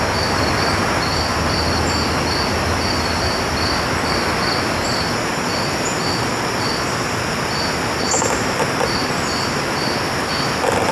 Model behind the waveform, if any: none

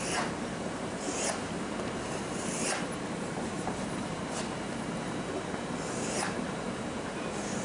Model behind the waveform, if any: vocoder, BigVGAN v2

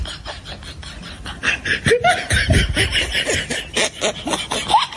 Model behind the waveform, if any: none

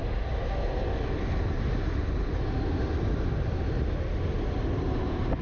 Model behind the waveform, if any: none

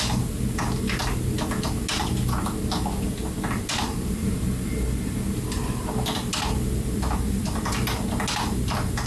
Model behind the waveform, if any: none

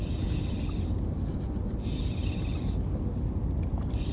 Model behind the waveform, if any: none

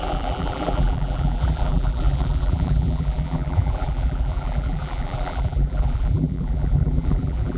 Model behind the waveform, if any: vocoder, BigVGAN v2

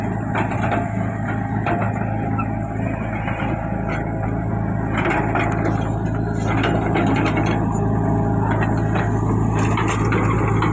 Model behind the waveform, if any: none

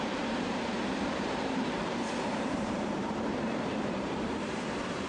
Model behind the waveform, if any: vocoder, BigVGAN v2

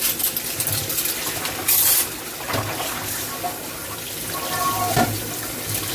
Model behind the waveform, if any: none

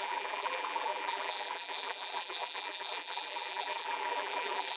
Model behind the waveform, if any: vocoder, BigVGAN v2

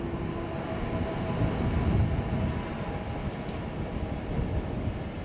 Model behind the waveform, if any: none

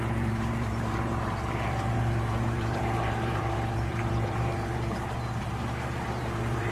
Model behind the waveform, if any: vocoder, BigVGAN v2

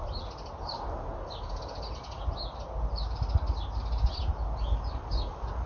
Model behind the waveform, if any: none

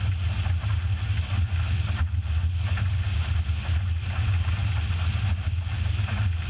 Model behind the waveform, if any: none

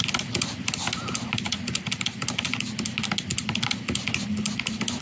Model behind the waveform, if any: none